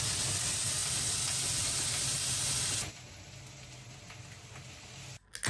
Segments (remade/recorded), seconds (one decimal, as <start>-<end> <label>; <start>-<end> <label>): 0.0-5.5 recorded